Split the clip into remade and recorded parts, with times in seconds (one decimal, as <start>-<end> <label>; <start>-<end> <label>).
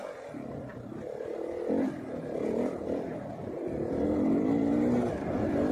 0.0-3.4 remade; 3.4-5.7 recorded